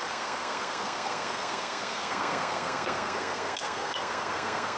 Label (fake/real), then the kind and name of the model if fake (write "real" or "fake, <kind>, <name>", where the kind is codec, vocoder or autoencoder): fake, codec, SNAC